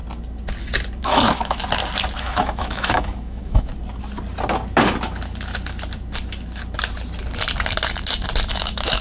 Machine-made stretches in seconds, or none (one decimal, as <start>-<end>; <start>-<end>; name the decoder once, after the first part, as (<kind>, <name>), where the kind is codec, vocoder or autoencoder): 1.0-1.6 (autoencoder, DAC-VAE); 2.2-3.7; 8.5-9.0